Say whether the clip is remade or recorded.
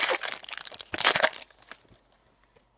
recorded